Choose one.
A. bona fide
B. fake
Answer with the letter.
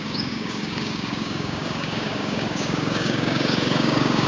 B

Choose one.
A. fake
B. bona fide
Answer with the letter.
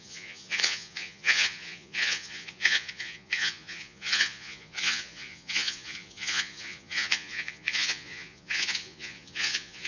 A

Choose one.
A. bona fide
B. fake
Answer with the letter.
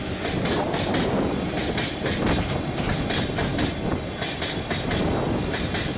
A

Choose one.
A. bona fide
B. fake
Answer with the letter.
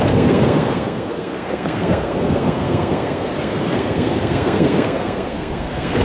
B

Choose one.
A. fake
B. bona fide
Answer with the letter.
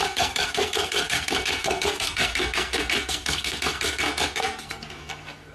A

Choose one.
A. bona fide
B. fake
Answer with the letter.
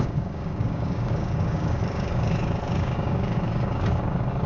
B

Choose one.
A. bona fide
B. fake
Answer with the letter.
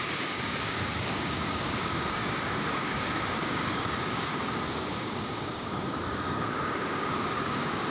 B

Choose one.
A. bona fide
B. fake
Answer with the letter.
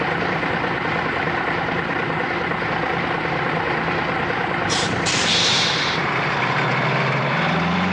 B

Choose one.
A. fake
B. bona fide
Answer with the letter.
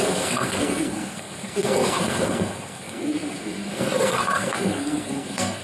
A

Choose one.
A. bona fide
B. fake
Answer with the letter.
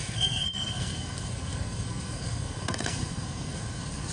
B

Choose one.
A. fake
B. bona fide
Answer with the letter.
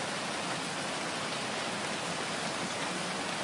B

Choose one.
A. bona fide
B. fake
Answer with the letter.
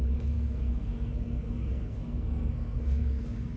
B